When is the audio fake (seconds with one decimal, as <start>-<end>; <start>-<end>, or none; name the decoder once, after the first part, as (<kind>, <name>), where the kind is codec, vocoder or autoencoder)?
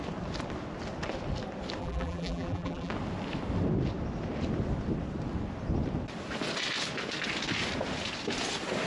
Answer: 1.8-2.9 (vocoder, BigVGAN v2)